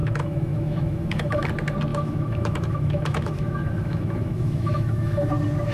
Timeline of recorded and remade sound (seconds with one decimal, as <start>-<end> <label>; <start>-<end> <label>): 0.0-1.5 remade; 1.5-1.9 recorded; 1.9-5.3 remade; 5.3-5.7 recorded

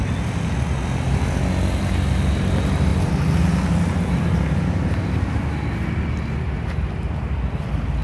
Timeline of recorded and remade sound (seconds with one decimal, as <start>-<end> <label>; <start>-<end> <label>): 0.0-8.0 recorded

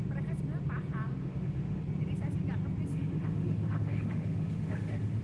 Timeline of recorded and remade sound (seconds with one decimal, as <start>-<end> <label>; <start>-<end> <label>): 0.0-1.2 recorded; 1.2-1.8 remade; 1.8-2.9 recorded; 2.9-5.2 remade

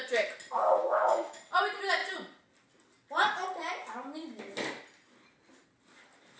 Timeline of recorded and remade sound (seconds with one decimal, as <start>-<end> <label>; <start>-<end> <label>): 0.0-0.8 recorded; 0.8-1.4 remade; 1.4-6.4 recorded

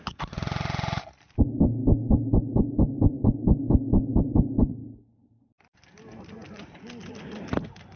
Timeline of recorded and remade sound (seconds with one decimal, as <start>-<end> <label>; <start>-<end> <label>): 0.0-8.0 recorded

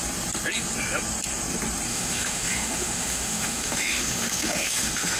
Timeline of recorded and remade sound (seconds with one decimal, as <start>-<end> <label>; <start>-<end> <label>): 0.0-1.9 recorded; 1.9-5.2 remade